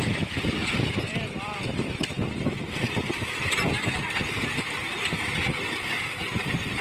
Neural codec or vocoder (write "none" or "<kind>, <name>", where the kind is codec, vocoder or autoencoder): none